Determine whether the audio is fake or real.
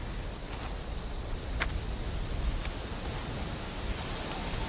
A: real